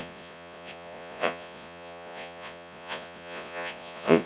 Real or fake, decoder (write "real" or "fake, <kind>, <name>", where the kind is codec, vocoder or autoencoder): fake, vocoder, Vocos